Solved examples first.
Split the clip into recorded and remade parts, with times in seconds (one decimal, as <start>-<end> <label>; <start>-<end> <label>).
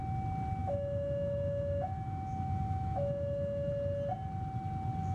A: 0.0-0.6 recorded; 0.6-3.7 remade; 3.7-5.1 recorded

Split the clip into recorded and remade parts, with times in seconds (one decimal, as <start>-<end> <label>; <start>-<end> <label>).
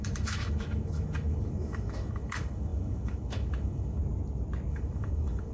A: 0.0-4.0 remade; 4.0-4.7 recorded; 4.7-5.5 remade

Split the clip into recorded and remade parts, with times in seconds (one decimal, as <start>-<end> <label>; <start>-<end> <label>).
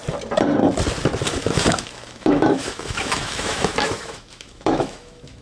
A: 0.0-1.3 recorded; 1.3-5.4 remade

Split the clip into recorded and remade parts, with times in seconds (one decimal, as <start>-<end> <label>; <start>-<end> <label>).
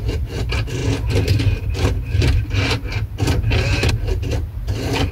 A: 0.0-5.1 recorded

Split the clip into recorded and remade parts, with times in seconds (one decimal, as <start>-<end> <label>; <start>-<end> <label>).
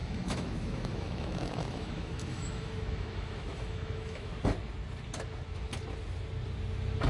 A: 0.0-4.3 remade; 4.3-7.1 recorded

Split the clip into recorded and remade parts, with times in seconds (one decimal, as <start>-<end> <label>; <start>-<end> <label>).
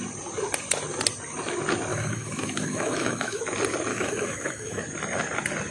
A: 0.0-1.9 recorded; 1.9-3.4 remade; 3.4-3.9 recorded; 3.9-4.8 remade; 4.8-5.7 recorded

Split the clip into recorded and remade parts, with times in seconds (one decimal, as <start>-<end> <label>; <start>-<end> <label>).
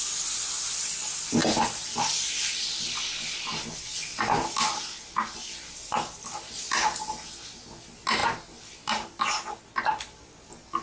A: 0.0-10.8 recorded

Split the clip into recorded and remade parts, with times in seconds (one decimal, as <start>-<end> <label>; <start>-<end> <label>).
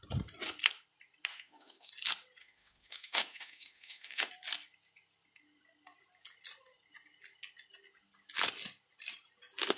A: 0.0-1.3 recorded; 1.3-1.9 remade; 1.9-2.4 recorded; 2.4-4.3 remade; 4.3-9.8 recorded